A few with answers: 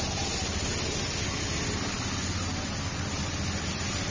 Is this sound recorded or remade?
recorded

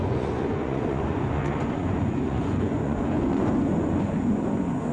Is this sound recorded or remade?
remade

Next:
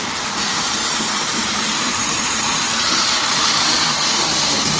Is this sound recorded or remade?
remade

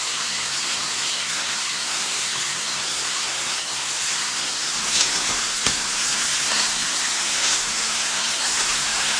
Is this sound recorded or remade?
remade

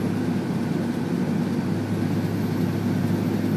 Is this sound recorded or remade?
recorded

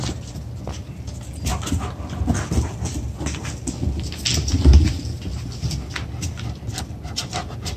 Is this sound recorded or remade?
recorded